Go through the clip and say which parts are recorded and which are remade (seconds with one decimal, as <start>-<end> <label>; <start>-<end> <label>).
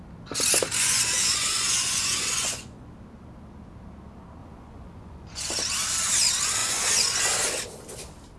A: 0.0-0.8 recorded; 0.8-2.9 remade; 2.9-4.4 recorded; 4.4-5.5 remade; 5.5-6.6 recorded; 6.6-7.2 remade; 7.2-8.4 recorded